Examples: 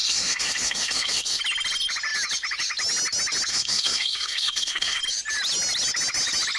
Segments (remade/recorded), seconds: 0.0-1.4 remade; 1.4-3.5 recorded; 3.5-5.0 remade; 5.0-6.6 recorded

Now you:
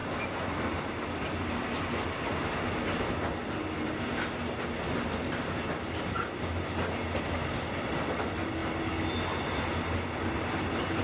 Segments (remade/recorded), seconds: 0.0-11.0 recorded

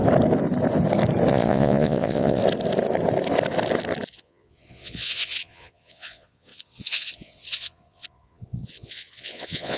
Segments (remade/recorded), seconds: 0.0-1.3 recorded; 1.3-2.4 remade; 2.4-4.1 recorded; 4.1-9.8 remade

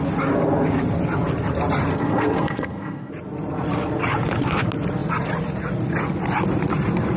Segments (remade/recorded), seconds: 0.0-1.9 recorded; 1.9-3.1 remade; 3.1-7.2 recorded

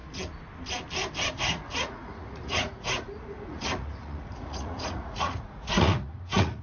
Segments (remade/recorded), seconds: 0.0-1.3 recorded; 1.3-6.6 remade

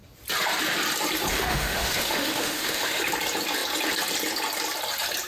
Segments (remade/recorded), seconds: 0.0-1.3 recorded; 1.3-3.0 remade; 3.0-5.3 recorded

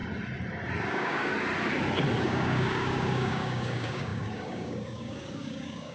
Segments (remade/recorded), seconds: 0.0-0.9 recorded; 0.9-1.3 remade; 1.3-2.2 recorded; 2.2-5.9 remade

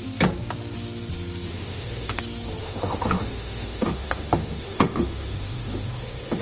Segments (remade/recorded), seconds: 0.0-1.5 recorded; 1.5-2.2 remade; 2.2-2.6 recorded; 2.6-6.4 remade